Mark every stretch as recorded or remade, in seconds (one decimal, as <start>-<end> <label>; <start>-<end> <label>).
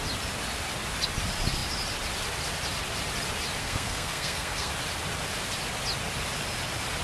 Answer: 0.0-3.6 recorded; 3.6-4.7 remade; 4.7-7.0 recorded